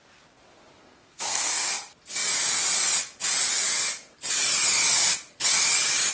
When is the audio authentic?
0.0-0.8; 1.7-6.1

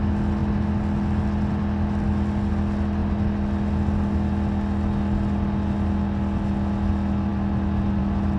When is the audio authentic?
0.0-8.4

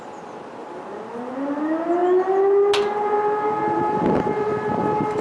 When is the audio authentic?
0.0-5.2

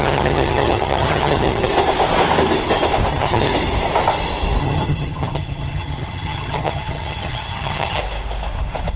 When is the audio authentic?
1.7-3.1; 3.5-4.6; 8.0-9.0

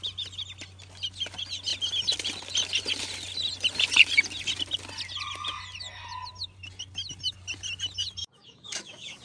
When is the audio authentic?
0.0-8.2

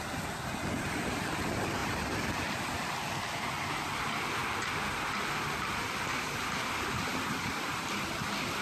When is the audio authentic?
0.0-8.6